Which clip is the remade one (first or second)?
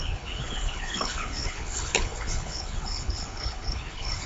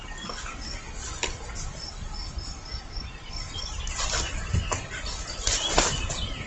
first